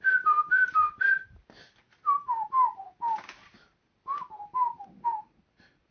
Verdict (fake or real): real